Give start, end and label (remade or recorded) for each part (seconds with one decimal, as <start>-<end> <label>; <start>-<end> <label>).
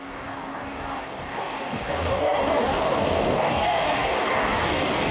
0.0-5.1 remade